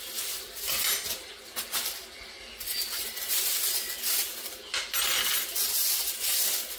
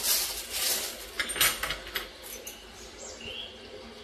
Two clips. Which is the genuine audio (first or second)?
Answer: second